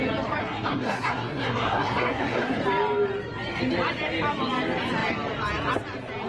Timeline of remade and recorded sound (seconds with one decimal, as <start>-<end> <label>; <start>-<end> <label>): 0.0-0.4 recorded; 0.4-2.6 remade; 2.6-6.3 recorded